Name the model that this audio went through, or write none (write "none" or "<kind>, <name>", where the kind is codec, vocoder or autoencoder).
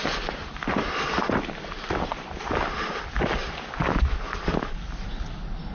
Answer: none